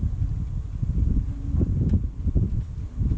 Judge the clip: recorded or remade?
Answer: recorded